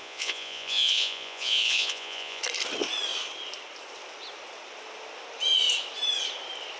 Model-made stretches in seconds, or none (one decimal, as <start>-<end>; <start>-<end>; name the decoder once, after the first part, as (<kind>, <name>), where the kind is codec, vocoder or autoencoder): 0.0-2.4 (vocoder, Vocos)